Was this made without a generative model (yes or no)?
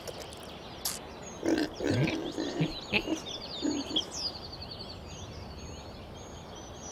yes